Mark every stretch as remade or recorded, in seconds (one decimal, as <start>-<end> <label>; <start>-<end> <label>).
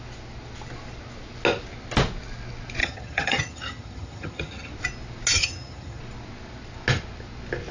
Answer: 0.0-2.8 recorded; 2.8-4.7 remade; 4.7-5.4 recorded; 5.4-6.0 remade; 6.0-7.7 recorded